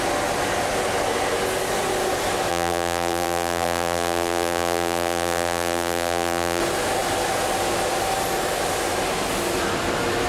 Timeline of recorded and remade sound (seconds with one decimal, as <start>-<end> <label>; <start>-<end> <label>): 0.0-2.5 recorded; 2.5-6.6 remade; 6.6-10.3 recorded